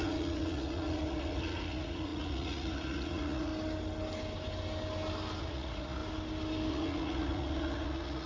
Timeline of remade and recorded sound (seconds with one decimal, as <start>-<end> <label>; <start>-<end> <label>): 0.0-3.5 remade; 3.5-5.4 recorded; 5.4-6.0 remade; 6.0-6.7 recorded; 6.7-8.3 remade